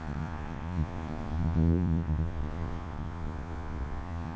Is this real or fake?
fake